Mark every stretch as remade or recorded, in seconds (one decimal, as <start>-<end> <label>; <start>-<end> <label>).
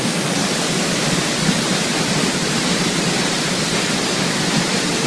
0.0-0.4 recorded; 0.4-3.5 remade; 3.5-5.1 recorded